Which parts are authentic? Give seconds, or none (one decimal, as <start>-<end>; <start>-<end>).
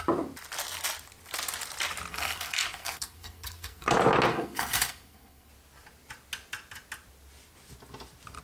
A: 0.0-2.1; 3.9-4.3; 5.5-8.4